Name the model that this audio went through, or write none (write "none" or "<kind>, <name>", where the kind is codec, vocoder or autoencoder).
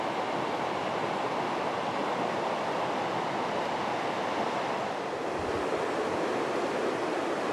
none